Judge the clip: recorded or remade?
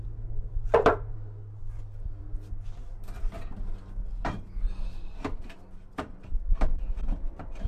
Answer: remade